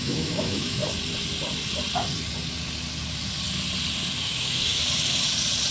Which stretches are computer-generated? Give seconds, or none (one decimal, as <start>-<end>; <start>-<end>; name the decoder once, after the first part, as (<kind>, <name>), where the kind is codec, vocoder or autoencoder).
0.0-0.8 (autoencoder, DAC-VAE); 4.2-4.8